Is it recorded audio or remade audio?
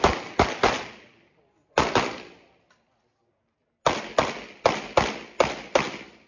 recorded